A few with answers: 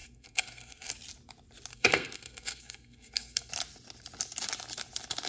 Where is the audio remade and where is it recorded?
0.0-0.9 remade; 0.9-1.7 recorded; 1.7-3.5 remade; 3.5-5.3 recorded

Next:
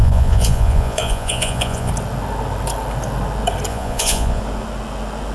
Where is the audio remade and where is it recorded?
0.0-1.9 remade; 1.9-3.7 recorded; 3.7-4.4 remade; 4.4-5.3 recorded

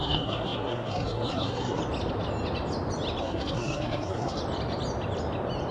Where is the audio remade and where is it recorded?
0.0-1.8 remade; 1.8-3.2 recorded; 3.2-4.4 remade; 4.4-5.7 recorded